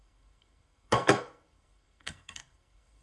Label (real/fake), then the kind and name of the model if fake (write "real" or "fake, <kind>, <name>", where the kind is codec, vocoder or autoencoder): fake, codec, SNAC